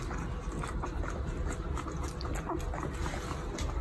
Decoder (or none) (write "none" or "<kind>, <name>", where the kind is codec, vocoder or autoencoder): none